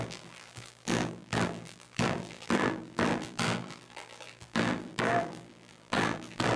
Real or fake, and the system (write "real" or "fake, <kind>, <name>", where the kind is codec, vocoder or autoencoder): fake, vocoder, BigVGAN v2